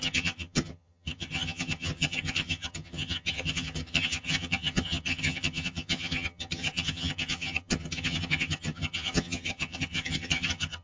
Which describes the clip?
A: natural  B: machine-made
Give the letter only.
B